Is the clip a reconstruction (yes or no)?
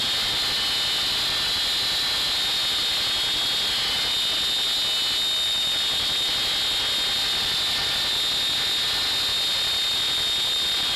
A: no